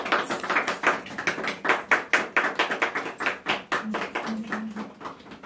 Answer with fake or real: real